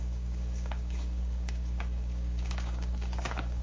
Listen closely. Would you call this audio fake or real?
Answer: fake